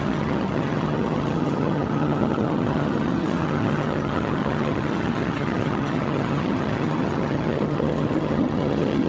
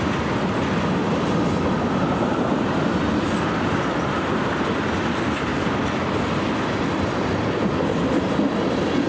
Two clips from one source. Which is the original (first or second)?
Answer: second